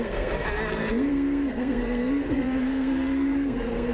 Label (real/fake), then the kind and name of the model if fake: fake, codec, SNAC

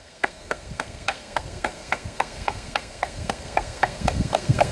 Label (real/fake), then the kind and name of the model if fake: fake, codec, SNAC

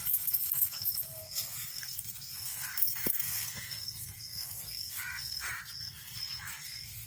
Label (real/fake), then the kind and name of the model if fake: fake, codec, SNAC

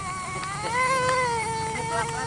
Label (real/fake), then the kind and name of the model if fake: real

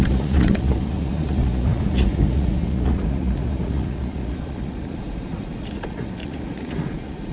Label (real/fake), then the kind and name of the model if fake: fake, vocoder, Vocos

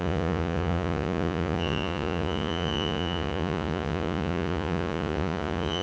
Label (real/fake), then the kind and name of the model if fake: fake, vocoder, Vocos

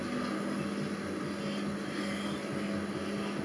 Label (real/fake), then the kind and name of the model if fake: real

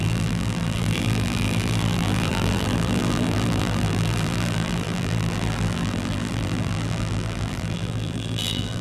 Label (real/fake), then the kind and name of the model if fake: fake, vocoder, BigVGAN v2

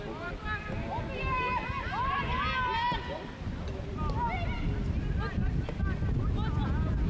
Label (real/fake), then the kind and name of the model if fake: real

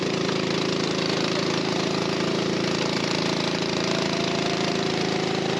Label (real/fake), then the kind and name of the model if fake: fake, vocoder, BigVGAN v2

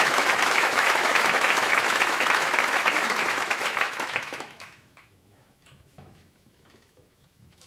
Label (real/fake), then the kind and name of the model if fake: fake, autoencoder, DAC-VAE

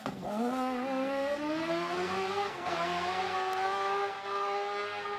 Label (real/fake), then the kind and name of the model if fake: fake, codec, SNAC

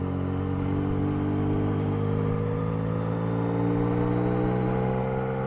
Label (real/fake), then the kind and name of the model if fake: real